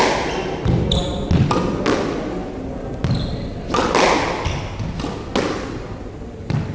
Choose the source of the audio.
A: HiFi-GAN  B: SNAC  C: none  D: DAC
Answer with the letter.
C